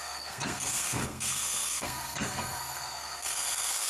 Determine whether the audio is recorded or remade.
remade